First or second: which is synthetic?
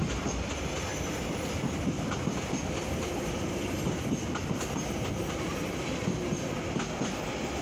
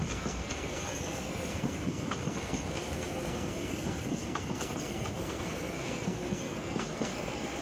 second